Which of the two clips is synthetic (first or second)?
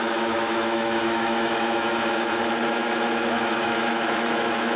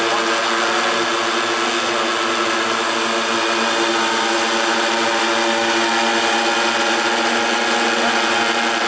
first